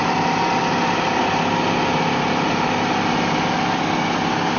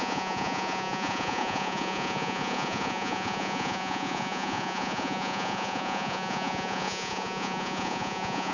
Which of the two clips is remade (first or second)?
second